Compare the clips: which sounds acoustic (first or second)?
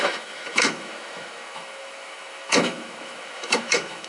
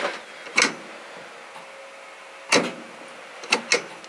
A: second